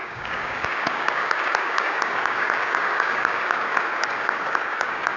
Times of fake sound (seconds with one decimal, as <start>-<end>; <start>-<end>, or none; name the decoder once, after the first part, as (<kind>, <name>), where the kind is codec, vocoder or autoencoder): 0.0-5.2 (codec, DAC)